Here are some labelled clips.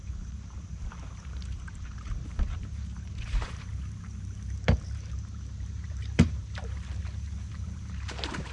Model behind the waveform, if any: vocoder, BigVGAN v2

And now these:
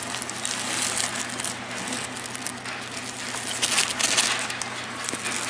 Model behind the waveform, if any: none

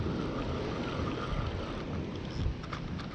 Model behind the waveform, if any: none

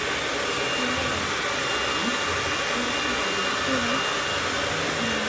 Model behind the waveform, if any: none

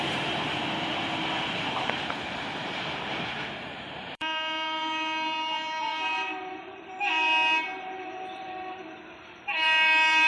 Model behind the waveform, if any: vocoder, BigVGAN v2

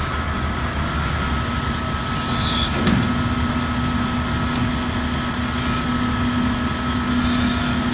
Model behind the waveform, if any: none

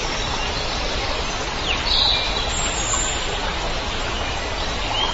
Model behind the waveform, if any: none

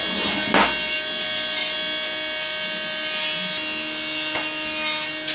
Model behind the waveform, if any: none